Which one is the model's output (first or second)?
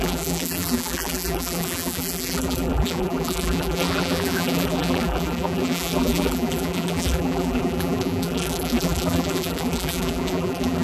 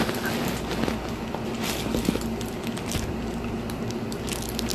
first